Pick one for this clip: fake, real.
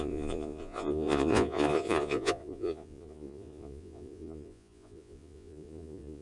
fake